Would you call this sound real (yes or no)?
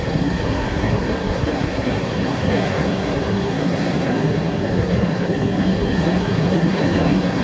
no